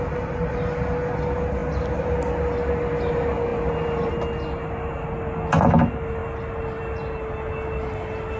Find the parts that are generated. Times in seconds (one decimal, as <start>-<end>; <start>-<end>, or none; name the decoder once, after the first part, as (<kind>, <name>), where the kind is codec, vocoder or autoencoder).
none